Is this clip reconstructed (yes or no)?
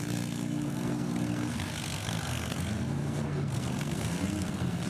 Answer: yes